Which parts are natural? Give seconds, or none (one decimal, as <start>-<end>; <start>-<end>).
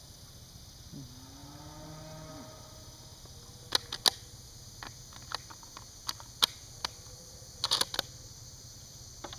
0.0-9.4